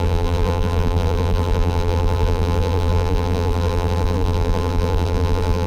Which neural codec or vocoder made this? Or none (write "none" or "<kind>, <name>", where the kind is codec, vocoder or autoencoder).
vocoder, BigVGAN v2